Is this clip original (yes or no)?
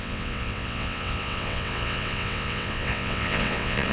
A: no